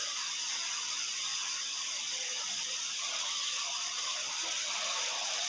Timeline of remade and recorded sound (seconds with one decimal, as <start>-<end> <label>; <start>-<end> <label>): 0.0-5.5 recorded